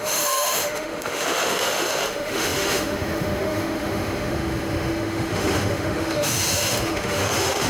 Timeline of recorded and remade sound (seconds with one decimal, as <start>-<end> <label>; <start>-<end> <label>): 0.0-7.7 remade